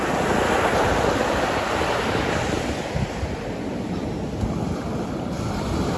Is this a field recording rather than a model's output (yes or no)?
yes